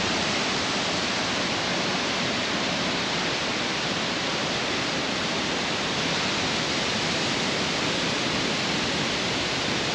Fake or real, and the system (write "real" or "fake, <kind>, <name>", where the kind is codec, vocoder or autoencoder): fake, vocoder, BigVGAN v2